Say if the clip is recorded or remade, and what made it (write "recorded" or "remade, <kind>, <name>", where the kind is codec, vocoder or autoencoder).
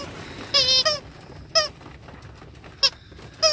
recorded